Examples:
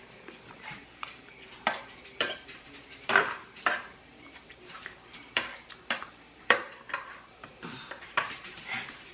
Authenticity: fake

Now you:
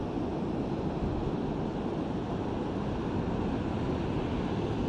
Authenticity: real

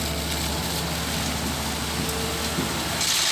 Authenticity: real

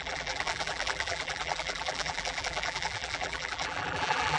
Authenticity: fake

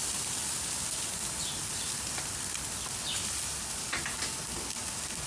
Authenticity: real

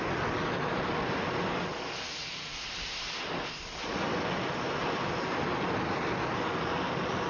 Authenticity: real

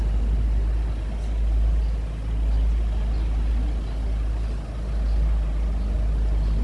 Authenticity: real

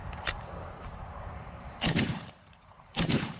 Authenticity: fake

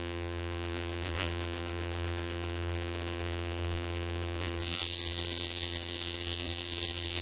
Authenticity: fake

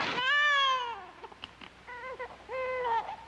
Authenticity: real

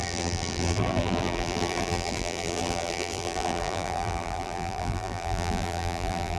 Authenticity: fake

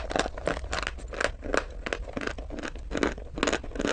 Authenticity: real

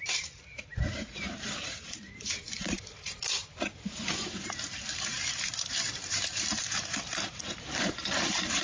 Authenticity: fake